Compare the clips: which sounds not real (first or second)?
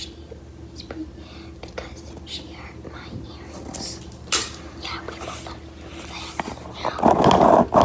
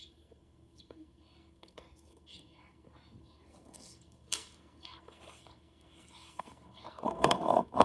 second